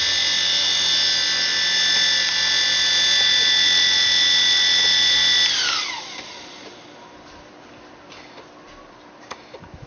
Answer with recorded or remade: recorded